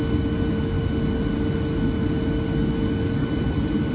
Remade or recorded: recorded